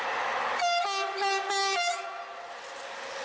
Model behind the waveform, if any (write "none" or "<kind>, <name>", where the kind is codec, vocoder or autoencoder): none